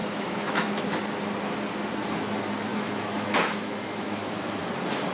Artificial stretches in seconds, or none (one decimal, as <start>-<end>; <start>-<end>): 0.0-0.8; 2.7-4.6

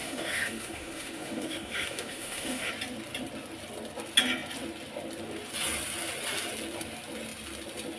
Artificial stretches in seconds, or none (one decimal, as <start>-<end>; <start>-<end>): 0.0-2.7

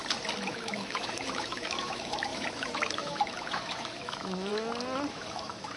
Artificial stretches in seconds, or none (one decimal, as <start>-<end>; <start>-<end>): 0.5-4.5; 5.1-5.8

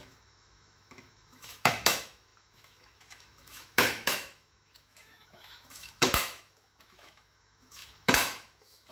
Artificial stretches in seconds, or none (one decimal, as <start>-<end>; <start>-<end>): 0.0-8.9

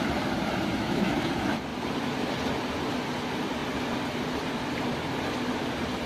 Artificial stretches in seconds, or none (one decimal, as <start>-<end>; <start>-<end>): 0.7-1.2

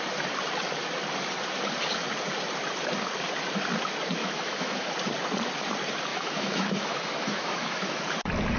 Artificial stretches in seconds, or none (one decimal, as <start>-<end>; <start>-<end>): 4.2-4.9; 6.1-8.0